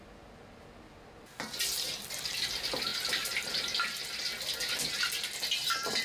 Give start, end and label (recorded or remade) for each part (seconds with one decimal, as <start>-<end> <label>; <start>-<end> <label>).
0.0-6.0 recorded

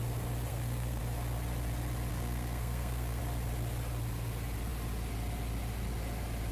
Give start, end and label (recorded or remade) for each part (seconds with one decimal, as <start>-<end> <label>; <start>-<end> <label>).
0.0-0.5 recorded; 0.5-1.0 remade; 1.0-2.1 recorded; 2.1-3.2 remade; 3.2-6.5 recorded

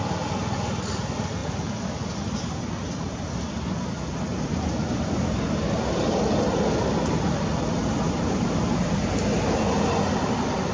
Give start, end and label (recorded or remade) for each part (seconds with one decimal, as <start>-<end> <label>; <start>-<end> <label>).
0.0-10.7 recorded

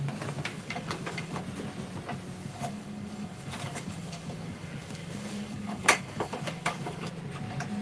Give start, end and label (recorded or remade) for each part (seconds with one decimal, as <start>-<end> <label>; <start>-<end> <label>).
0.0-0.5 recorded; 0.5-1.4 remade; 1.4-2.4 recorded; 2.4-7.1 remade; 7.1-7.8 recorded

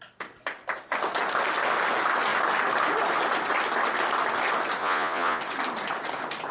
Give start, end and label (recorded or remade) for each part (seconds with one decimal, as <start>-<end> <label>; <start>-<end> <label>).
0.0-4.8 recorded; 4.8-5.4 remade; 5.4-6.5 recorded

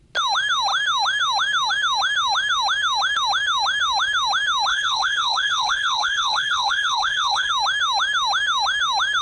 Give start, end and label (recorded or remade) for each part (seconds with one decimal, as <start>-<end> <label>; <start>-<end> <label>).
0.0-4.7 recorded; 4.7-7.5 remade; 7.5-9.2 recorded

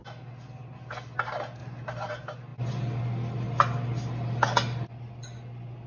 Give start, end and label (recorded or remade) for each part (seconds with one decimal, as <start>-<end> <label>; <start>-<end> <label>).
0.0-5.9 recorded